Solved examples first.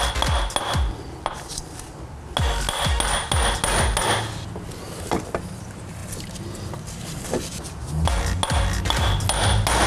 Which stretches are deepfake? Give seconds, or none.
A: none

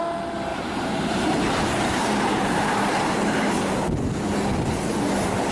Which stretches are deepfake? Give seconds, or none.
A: 0.5-3.6 (vocoder, BigVGAN v2)

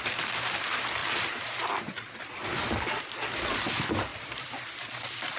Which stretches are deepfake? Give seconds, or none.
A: 1.0-3.0 (vocoder, BigVGAN v2); 4.1-5.4

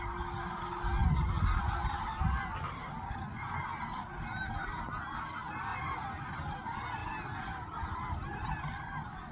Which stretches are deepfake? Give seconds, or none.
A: none